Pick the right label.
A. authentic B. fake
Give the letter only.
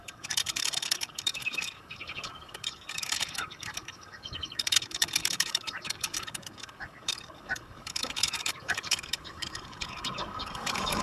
B